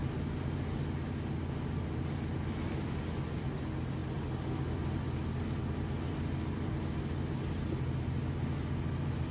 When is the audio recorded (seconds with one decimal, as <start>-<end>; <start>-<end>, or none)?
0.0-9.3